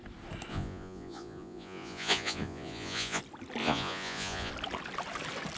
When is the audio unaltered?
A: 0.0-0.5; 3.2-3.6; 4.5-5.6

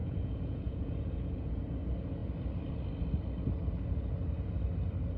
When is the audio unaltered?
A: 1.6-5.2

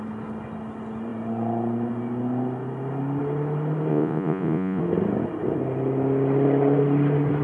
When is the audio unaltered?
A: 0.0-3.9; 4.8-7.4

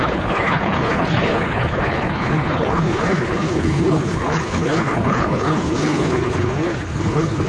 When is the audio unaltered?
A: none